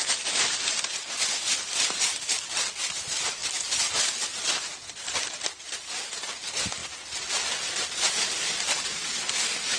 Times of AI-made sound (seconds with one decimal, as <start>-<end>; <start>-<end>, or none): none